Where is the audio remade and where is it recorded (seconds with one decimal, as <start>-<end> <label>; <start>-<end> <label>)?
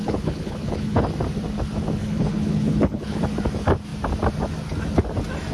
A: 0.0-1.1 remade; 1.1-2.0 recorded; 2.0-3.2 remade; 3.2-5.5 recorded